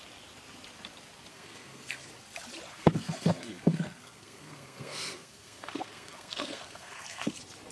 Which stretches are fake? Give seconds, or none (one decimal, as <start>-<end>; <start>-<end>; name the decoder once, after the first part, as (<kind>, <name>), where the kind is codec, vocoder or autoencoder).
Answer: 1.3-2.1 (codec, SNAC); 2.7-7.3